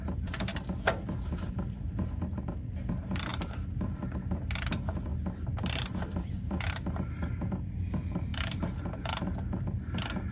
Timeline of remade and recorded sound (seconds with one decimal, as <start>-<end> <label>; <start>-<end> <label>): 0.0-5.1 remade; 5.1-5.6 recorded; 5.6-10.3 remade